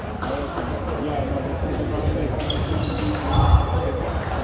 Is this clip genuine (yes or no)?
yes